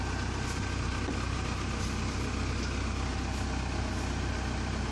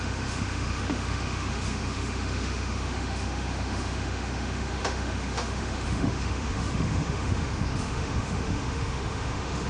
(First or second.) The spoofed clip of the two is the second